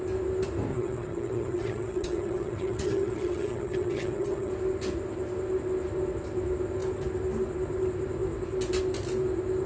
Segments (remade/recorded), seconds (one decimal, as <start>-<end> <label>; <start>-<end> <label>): 0.0-0.7 recorded; 0.7-4.5 remade; 4.5-9.7 recorded